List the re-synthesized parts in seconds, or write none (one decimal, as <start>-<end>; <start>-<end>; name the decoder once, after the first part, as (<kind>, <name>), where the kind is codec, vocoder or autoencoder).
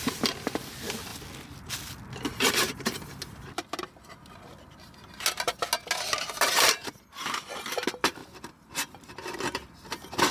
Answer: none